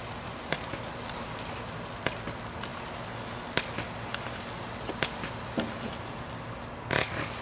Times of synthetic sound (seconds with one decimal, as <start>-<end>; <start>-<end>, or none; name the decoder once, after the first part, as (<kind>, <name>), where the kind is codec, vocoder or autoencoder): none